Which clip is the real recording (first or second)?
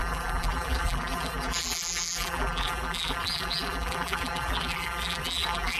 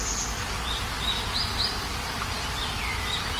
second